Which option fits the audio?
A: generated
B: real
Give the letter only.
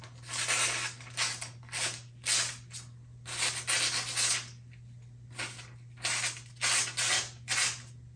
B